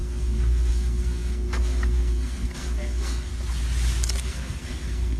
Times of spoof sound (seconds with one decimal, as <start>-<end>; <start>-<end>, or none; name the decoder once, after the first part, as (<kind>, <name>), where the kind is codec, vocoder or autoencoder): 0.0-3.3 (codec, SNAC); 4.2-5.2